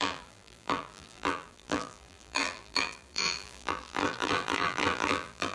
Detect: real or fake fake